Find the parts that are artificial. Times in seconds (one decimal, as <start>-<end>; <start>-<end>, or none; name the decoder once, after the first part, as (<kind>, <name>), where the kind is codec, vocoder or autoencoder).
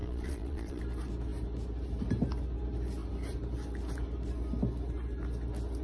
0.0-0.8 (vocoder, Vocos)